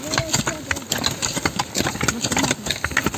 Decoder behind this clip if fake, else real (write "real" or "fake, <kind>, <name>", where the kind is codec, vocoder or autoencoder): real